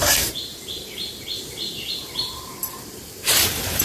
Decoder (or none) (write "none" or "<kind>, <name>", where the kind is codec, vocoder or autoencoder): vocoder, BigVGAN v2